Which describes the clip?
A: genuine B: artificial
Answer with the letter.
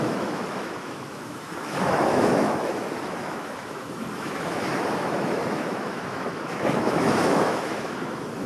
B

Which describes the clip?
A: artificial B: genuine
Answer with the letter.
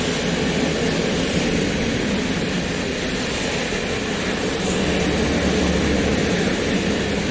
B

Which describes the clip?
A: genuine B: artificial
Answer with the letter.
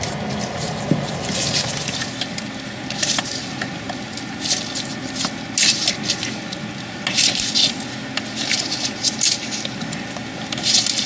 A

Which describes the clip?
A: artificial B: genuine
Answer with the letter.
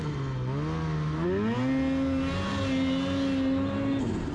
B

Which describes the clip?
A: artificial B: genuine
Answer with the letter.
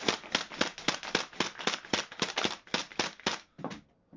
B